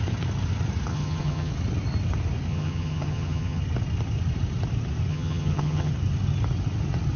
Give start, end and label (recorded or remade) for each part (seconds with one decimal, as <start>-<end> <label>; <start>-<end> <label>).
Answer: 0.0-0.9 recorded; 0.9-1.5 remade; 1.5-2.5 recorded; 2.5-3.6 remade; 3.6-5.1 recorded; 5.1-5.9 remade; 5.9-7.2 recorded